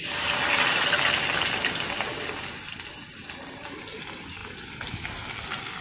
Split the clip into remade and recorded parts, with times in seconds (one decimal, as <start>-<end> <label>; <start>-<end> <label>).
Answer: 0.0-5.8 recorded

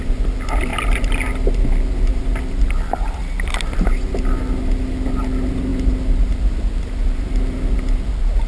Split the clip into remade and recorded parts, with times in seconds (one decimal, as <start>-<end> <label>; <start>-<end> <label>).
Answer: 0.0-2.1 recorded; 2.1-4.1 remade; 4.1-8.5 recorded

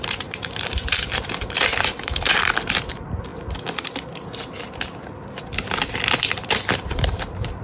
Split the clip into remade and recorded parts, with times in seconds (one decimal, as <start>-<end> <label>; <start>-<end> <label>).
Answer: 0.0-3.3 remade; 3.3-6.8 recorded; 6.8-7.6 remade

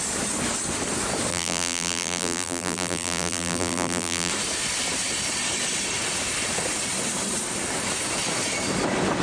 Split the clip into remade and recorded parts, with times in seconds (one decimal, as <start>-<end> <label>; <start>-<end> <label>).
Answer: 0.0-1.3 recorded; 1.3-4.3 remade; 4.3-9.2 recorded

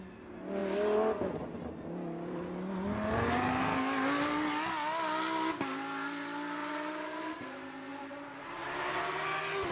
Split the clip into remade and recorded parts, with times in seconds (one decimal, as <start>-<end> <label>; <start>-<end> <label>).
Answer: 0.0-6.6 recorded; 6.6-7.3 remade; 7.3-7.9 recorded; 7.9-8.8 remade; 8.8-9.7 recorded

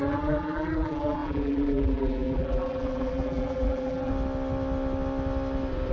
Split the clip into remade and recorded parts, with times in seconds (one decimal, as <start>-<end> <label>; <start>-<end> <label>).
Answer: 0.0-4.1 remade; 4.1-5.9 recorded